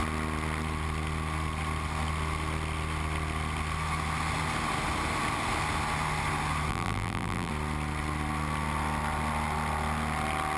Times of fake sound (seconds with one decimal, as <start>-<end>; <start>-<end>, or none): 6.7-7.5